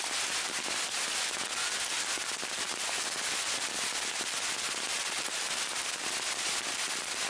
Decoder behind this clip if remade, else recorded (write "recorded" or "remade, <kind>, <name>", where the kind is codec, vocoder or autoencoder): recorded